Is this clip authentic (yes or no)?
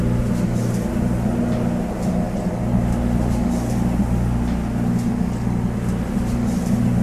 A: yes